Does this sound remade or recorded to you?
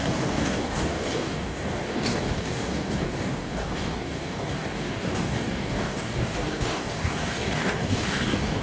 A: remade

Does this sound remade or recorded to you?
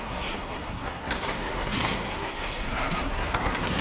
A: remade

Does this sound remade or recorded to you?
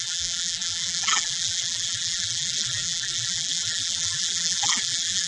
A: remade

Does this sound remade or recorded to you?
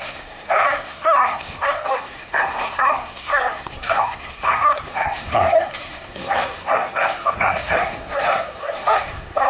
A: remade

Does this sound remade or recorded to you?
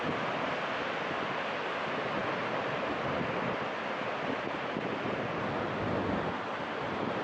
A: recorded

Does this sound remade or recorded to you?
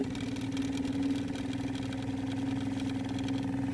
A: recorded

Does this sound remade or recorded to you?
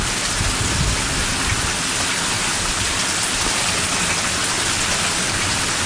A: recorded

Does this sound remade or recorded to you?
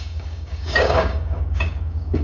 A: remade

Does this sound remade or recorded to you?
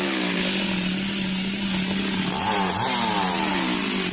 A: recorded